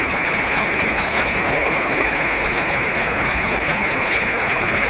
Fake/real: fake